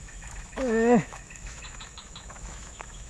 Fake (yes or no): yes